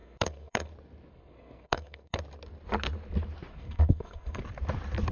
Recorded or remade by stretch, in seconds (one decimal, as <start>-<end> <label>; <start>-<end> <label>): 0.0-0.7 remade; 0.7-1.1 recorded; 1.1-2.2 remade; 2.2-3.5 recorded; 3.5-4.4 remade; 4.4-5.1 recorded

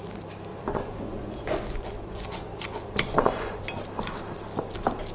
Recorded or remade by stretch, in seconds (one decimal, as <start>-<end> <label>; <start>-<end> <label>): 0.0-0.5 recorded; 0.5-3.6 remade; 3.6-5.1 recorded

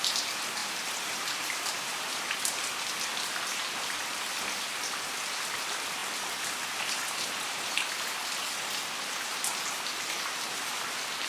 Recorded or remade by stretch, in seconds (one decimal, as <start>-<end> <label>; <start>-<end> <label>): 0.0-0.6 recorded; 0.6-5.6 remade; 5.6-6.0 recorded; 6.0-7.1 remade; 7.1-11.3 recorded

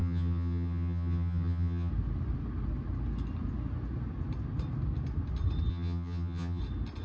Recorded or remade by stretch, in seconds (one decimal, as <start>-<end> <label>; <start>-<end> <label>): 0.0-1.9 remade; 1.9-5.7 recorded; 5.7-6.6 remade; 6.6-7.0 recorded

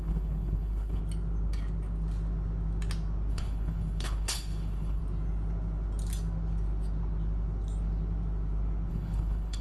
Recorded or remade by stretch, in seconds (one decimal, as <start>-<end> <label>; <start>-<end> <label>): 0.0-1.0 remade; 1.0-3.3 recorded; 3.3-5.0 remade; 5.0-8.9 recorded; 8.9-9.6 remade

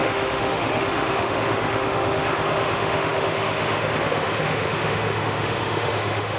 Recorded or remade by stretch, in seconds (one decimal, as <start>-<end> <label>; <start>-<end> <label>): 0.0-6.4 remade

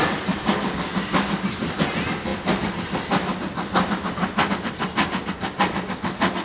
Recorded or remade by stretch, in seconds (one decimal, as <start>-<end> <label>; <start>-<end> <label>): 0.0-6.4 recorded